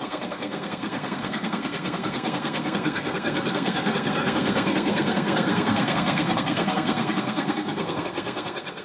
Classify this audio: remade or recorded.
remade